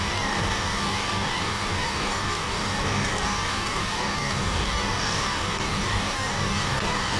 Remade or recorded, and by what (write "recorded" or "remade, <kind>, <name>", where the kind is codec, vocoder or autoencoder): remade, codec, DAC